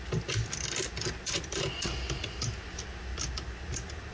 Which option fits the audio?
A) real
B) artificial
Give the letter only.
A